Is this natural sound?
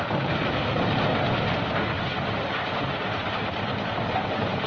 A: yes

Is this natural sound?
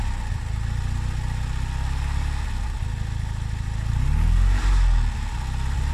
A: yes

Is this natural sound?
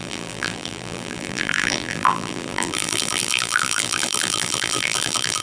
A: no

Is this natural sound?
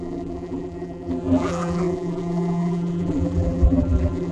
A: no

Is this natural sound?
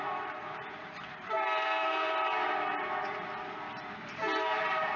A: no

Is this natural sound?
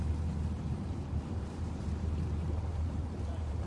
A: no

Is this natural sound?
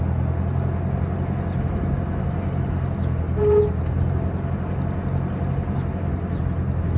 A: yes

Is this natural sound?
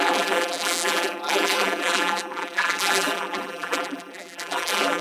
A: no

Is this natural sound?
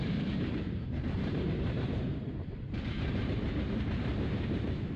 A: no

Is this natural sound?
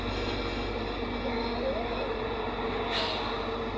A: yes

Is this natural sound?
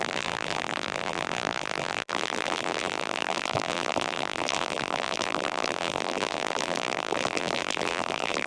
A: no